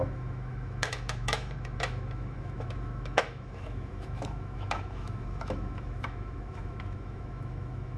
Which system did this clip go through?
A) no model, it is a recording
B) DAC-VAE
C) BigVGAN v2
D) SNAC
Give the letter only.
B